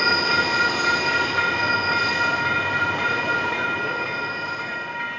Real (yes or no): yes